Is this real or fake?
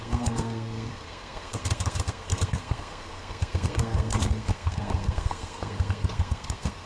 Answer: fake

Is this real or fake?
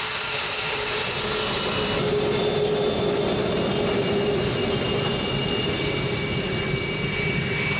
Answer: real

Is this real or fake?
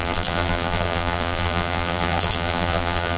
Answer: fake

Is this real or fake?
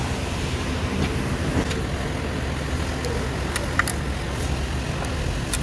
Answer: real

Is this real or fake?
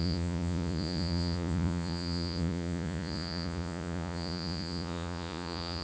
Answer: fake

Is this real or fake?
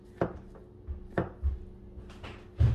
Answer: real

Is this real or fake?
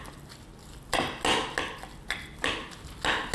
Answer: real